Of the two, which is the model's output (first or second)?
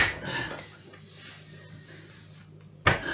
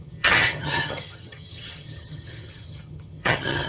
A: second